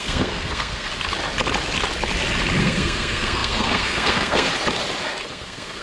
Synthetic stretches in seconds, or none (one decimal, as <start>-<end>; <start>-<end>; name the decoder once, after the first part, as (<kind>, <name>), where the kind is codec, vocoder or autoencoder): 0.0-0.9 (codec, SNAC); 2.6-4.5; 5.3-5.8